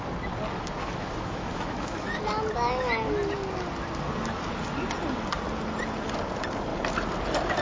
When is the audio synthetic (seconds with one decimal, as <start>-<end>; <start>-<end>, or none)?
0.8-2.2